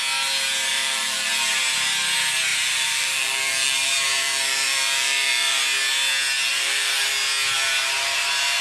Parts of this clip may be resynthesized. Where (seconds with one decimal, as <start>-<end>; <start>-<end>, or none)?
0.7-1.3; 2.5-5.6; 6.5-7.1